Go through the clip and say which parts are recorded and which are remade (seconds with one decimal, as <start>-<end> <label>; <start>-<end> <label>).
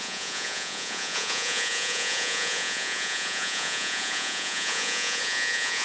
0.0-5.8 remade